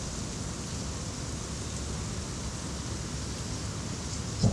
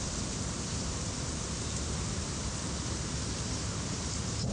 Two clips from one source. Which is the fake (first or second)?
second